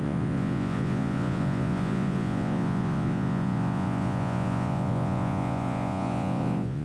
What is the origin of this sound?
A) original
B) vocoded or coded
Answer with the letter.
B